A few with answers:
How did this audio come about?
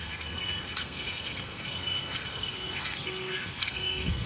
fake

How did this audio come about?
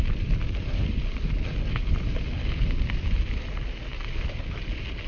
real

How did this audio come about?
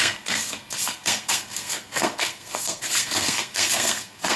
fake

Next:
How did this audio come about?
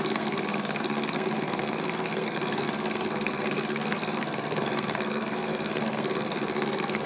fake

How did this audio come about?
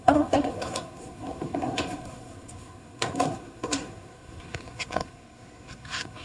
fake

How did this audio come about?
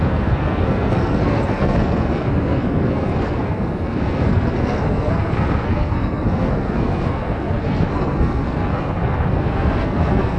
fake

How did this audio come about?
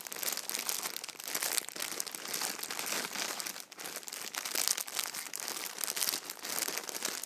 real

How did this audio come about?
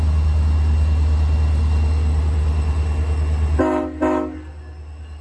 real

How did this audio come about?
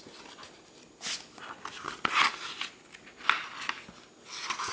real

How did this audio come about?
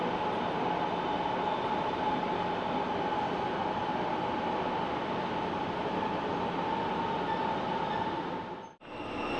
real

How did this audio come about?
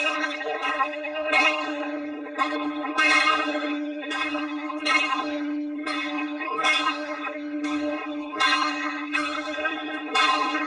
fake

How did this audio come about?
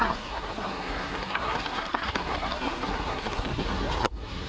fake